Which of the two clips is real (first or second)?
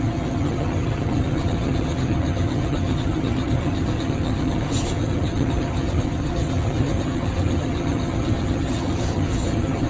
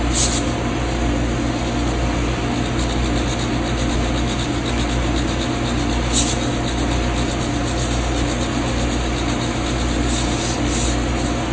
second